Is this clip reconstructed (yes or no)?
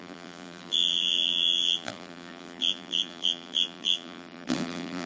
yes